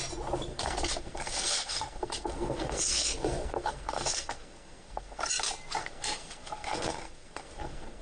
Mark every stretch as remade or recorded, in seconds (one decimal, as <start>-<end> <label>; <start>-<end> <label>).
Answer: 0.0-0.5 recorded; 0.5-5.3 remade; 5.3-5.8 recorded; 5.8-8.0 remade